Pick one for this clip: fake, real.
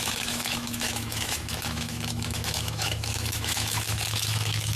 fake